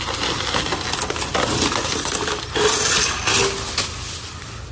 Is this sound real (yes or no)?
yes